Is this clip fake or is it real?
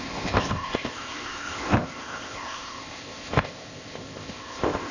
fake